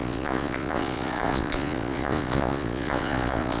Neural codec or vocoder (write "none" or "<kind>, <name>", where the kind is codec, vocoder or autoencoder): vocoder, Vocos